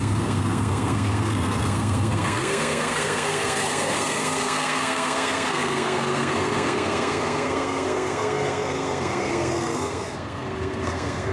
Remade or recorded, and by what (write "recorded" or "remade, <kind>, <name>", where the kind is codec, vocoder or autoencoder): remade, codec, SNAC